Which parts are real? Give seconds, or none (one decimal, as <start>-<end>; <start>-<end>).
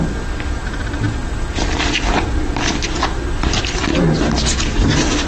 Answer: 0.0-5.3